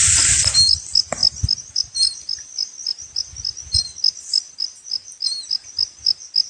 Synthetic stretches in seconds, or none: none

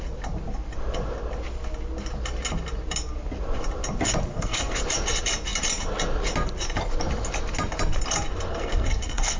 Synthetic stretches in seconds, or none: 4.3-4.8 (codec, SNAC); 8.5-9.4